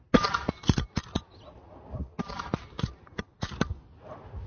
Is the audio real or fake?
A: real